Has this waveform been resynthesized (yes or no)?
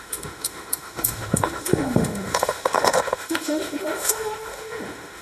yes